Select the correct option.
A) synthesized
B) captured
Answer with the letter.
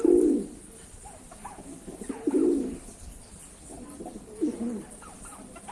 B